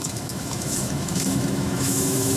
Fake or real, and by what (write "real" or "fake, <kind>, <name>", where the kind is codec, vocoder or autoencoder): fake, autoencoder, DAC-VAE